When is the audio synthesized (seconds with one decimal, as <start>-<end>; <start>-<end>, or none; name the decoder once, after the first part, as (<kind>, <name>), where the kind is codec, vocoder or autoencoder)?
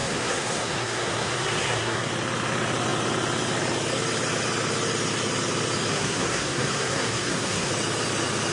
0.0-2.1 (codec, SNAC); 5.9-7.7